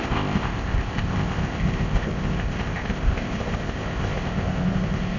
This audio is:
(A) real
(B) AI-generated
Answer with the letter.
B